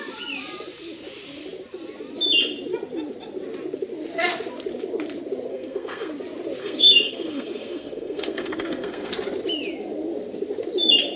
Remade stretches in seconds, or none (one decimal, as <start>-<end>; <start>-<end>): 5.5-6.1; 6.6-9.1